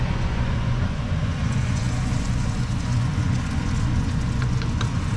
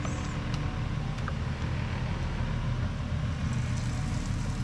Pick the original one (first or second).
second